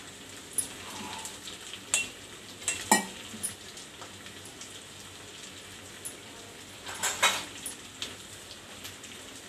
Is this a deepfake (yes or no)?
no